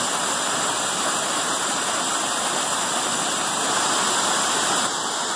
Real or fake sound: fake